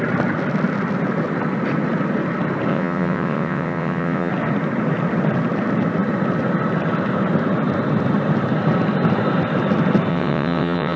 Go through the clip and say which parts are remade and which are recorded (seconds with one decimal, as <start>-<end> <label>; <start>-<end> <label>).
0.0-2.7 recorded; 2.7-4.3 remade; 4.3-10.1 recorded; 10.1-11.0 remade